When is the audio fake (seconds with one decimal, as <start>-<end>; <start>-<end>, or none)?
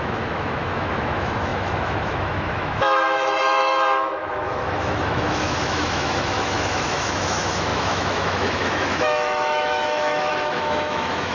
0.0-11.3